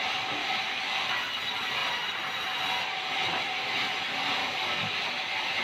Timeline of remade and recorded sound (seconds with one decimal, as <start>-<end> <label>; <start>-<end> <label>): 0.0-0.4 recorded; 0.4-1.0 remade; 1.0-4.4 recorded; 4.4-4.9 remade; 4.9-5.6 recorded